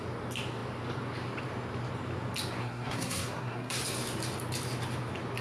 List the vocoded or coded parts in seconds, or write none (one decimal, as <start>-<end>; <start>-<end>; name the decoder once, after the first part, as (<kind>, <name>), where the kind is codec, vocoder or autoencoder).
2.6-3.8 (codec, SNAC)